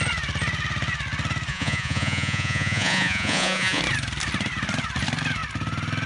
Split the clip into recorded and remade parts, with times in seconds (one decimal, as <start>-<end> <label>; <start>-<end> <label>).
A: 0.0-1.5 recorded; 1.5-3.8 remade; 3.8-6.1 recorded